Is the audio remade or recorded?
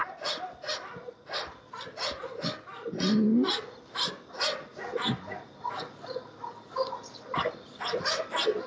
recorded